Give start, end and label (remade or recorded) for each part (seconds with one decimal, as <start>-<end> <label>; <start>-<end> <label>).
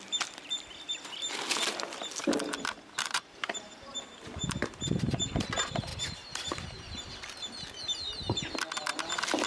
0.0-2.2 recorded; 2.2-5.3 remade; 5.3-5.9 recorded; 5.9-7.1 remade; 7.1-9.5 recorded